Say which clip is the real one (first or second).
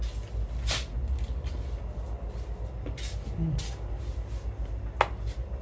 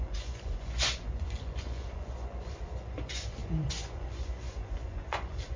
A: first